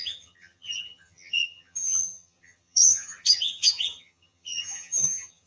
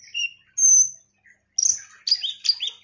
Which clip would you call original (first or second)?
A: second